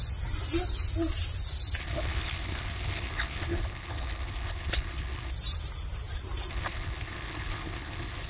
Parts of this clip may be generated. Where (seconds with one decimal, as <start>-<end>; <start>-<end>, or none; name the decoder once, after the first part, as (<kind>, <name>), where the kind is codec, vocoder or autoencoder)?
1.8-5.3 (codec, HILCodec); 6.5-8.3